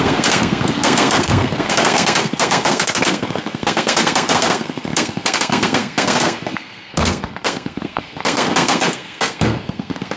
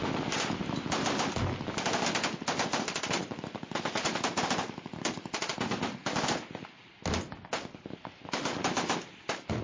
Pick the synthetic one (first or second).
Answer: first